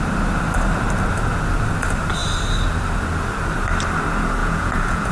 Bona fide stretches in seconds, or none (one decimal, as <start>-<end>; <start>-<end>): 0.0-4.4